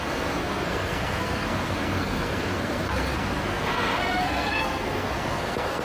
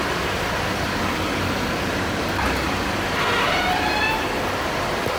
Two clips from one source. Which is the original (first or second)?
second